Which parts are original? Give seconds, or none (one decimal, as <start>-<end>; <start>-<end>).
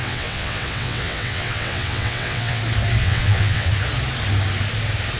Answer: 2.6-3.0; 3.7-5.2